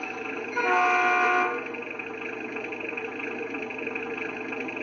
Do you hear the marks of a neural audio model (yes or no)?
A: no